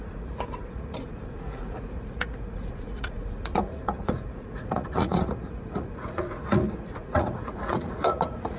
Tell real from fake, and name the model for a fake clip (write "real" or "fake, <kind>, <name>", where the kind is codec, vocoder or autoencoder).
fake, vocoder, Vocos